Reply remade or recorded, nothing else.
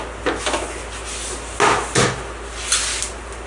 recorded